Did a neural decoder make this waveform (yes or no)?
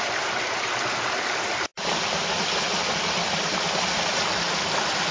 no